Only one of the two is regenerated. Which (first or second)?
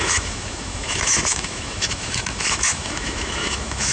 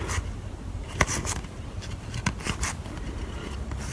first